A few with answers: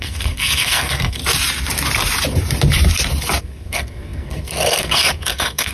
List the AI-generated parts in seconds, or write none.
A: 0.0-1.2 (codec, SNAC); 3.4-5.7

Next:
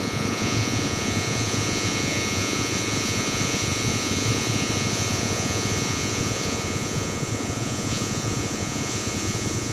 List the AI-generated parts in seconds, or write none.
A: 0.0-9.7 (vocoder, Vocos)

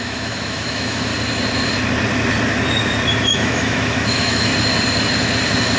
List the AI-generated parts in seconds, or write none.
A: 0.0-1.1 (autoencoder, DAC-VAE); 3.2-4.5

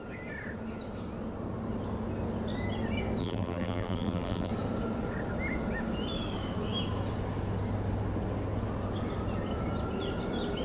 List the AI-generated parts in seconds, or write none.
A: 3.2-4.5 (vocoder, BigVGAN v2)

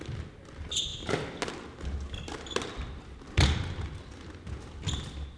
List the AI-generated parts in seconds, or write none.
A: none

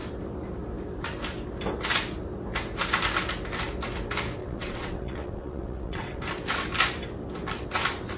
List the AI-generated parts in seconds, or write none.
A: 4.4-6.2 (vocoder, WaveNeXt)

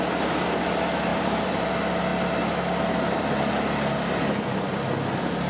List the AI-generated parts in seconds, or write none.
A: 1.1-1.7 (vocoder, BigVGAN v2)

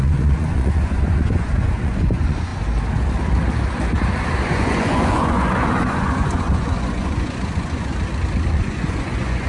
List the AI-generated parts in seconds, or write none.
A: 0.0-2.5 (vocoder, Vocos); 4.4-7.9; 8.5-9.5